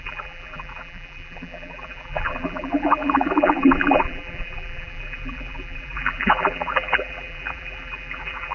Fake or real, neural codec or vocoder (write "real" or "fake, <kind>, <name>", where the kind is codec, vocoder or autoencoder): fake, vocoder, BigVGAN v2